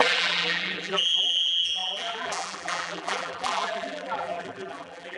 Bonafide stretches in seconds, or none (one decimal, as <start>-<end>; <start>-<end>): none